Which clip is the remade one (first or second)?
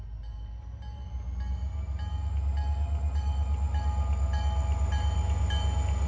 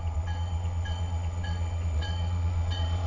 second